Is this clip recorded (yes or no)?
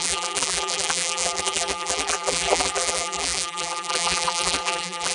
no